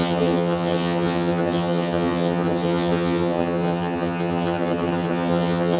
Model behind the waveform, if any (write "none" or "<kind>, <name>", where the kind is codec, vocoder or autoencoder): vocoder, HiFi-GAN